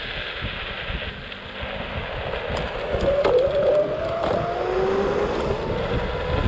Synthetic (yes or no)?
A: no